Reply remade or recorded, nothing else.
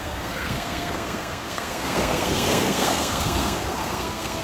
remade